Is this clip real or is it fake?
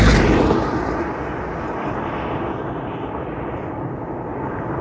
real